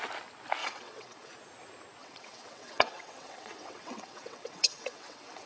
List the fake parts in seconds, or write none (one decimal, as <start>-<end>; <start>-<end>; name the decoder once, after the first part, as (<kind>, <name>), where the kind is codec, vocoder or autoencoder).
0.6-1.3 (vocoder, WaveNeXt); 2.0-5.5